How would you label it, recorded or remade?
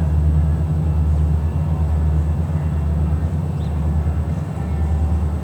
recorded